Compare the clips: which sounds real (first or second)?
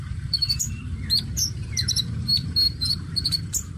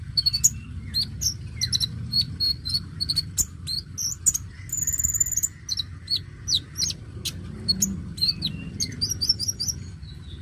second